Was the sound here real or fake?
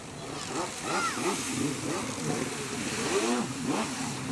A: real